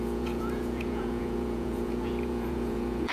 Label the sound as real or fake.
fake